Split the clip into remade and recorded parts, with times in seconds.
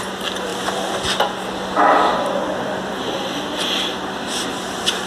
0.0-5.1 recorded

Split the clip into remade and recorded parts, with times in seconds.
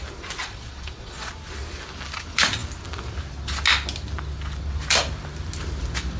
0.0-0.4 recorded; 0.4-1.3 remade; 1.3-6.2 recorded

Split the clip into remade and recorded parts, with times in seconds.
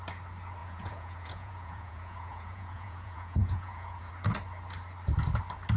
0.0-0.6 recorded; 0.6-4.1 remade; 4.1-5.8 recorded